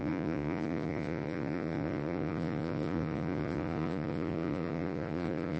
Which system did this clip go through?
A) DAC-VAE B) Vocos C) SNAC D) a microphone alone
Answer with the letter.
B